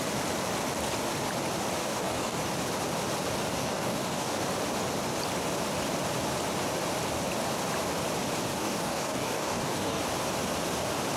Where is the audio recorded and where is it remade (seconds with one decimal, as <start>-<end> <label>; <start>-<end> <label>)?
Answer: 0.0-1.8 recorded; 1.8-2.4 remade; 2.4-3.6 recorded; 3.6-4.4 remade; 4.4-8.5 recorded; 8.5-10.0 remade; 10.0-11.2 recorded